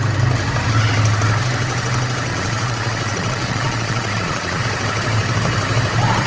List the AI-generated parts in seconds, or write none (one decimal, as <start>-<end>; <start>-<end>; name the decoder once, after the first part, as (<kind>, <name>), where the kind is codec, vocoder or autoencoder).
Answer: 2.3-4.6 (vocoder, Vocos)